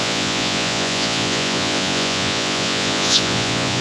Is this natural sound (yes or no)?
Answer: no